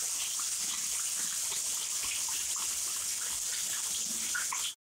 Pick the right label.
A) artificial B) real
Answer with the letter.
B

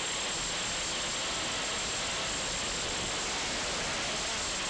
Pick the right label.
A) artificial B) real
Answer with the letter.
B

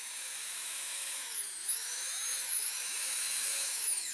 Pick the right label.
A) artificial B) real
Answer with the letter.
A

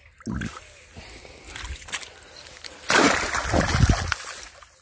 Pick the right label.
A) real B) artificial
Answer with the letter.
A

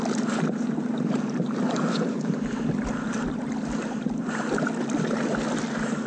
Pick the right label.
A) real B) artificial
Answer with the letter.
A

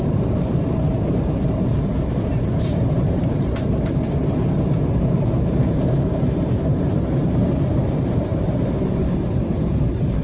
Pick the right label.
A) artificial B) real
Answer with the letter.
A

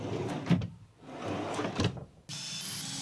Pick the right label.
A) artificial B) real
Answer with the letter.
B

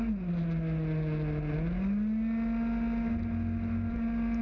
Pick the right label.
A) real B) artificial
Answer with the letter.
A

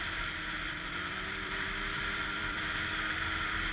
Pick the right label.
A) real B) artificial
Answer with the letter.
B